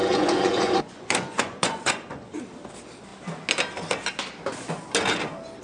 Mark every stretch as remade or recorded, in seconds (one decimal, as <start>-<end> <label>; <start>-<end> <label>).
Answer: 0.0-2.4 remade; 2.4-5.6 recorded